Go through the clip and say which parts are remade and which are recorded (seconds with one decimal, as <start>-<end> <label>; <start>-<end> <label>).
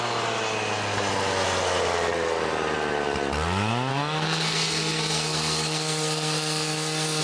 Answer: 0.0-3.9 recorded; 3.9-7.2 remade